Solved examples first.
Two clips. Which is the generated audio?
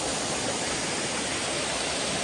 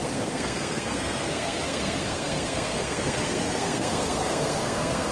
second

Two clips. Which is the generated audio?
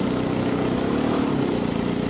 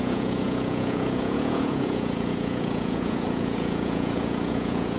second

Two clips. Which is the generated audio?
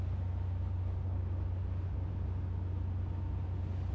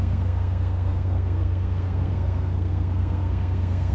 second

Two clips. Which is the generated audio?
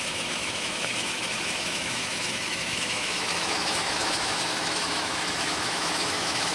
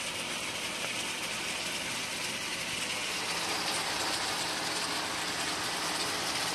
first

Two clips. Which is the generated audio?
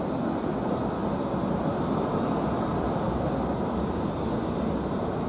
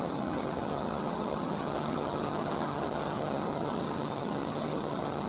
second